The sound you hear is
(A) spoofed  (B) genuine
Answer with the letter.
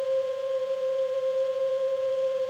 A